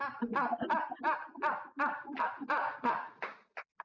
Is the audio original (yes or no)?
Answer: yes